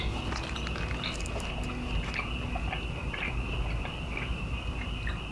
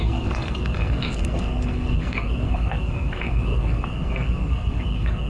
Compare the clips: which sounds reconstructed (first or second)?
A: second